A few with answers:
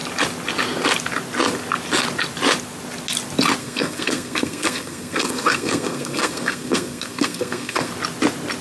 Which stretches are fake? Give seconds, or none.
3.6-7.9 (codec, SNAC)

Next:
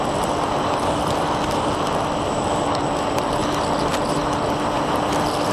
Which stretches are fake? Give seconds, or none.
none

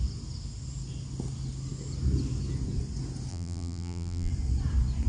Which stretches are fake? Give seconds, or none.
3.3-4.3 (vocoder, BigVGAN v2)

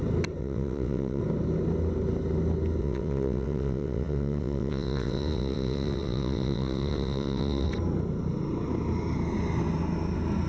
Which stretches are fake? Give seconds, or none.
0.4-1.2 (vocoder, WaveNeXt); 2.8-7.7

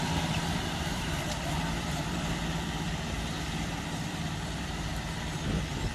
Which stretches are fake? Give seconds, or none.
0.0-5.9 (vocoder, BigVGAN v2)

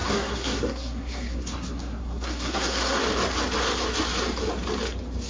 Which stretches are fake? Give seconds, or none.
0.0-3.0 (codec, SNAC)